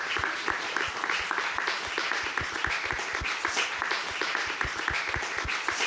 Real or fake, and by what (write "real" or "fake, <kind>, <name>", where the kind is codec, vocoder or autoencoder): fake, vocoder, BigVGAN v2